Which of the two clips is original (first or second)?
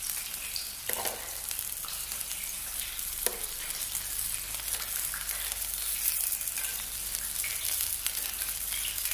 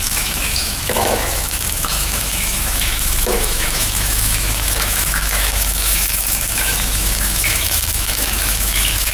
first